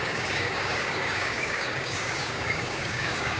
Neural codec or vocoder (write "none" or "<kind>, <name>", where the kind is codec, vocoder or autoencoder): codec, DAC